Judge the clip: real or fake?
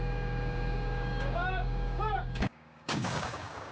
fake